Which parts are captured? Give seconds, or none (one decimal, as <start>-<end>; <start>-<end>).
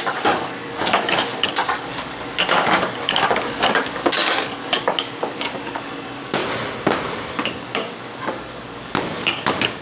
6.4-7.0